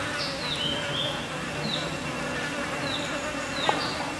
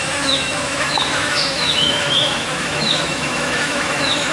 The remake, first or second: second